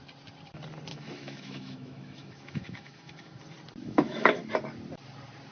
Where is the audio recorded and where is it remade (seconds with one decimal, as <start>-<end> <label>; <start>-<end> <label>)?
0.0-0.9 recorded; 0.9-3.4 remade; 3.4-3.8 recorded; 3.8-4.4 remade; 4.4-5.5 recorded